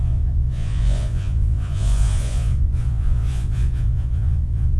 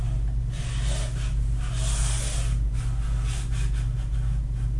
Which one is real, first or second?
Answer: second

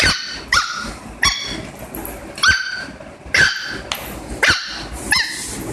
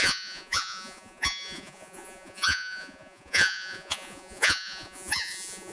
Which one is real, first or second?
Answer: first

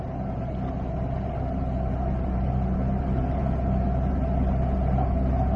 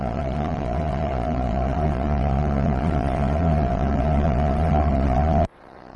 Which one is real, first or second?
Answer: first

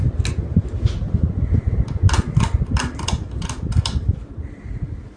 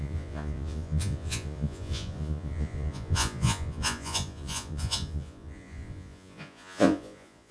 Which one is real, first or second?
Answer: first